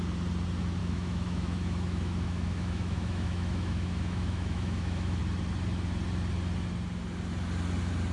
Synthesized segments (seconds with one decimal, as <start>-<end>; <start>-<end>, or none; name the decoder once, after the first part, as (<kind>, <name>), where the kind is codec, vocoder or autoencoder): 0.8-5.2 (autoencoder, DAC-VAE)